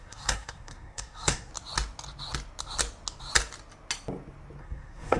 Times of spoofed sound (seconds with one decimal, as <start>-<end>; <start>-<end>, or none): 0.0-1.5; 4.6-5.2